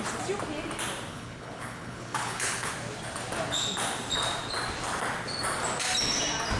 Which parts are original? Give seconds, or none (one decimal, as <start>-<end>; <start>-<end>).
0.0-1.1; 2.7-6.6